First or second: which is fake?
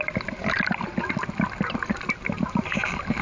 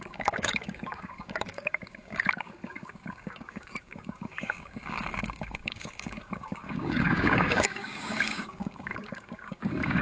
second